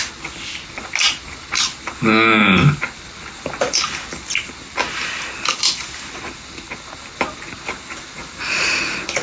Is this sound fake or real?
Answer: real